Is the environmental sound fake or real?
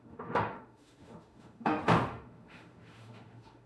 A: fake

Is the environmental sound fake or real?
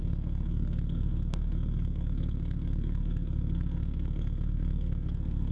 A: fake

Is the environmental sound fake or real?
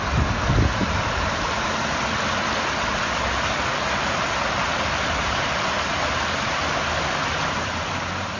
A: real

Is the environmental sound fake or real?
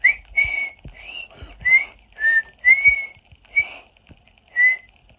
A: real